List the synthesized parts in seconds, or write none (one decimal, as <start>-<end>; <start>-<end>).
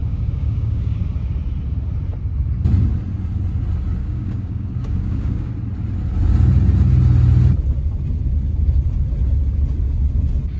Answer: 0.0-1.0; 4.0-5.5